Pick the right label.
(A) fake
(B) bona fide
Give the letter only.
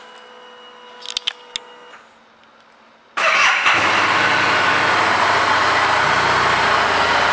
B